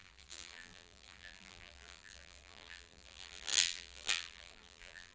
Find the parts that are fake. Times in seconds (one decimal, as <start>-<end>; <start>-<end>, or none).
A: 0.0-5.1